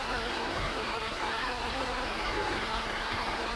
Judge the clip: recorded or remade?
remade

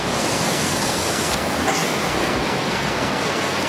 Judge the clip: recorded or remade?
remade